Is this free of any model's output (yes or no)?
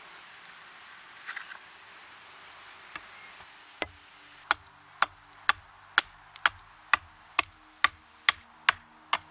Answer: yes